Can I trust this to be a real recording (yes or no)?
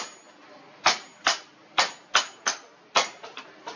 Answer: yes